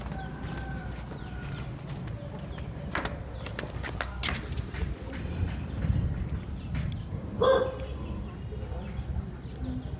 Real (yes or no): yes